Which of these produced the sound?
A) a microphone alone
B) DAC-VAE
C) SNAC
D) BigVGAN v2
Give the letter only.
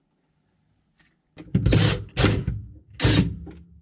A